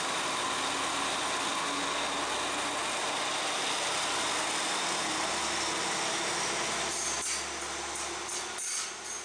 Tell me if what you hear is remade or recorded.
recorded